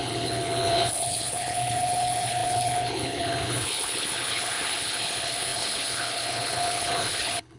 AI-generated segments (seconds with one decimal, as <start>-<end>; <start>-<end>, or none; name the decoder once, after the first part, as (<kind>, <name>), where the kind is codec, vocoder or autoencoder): 0.0-7.6 (codec, HILCodec)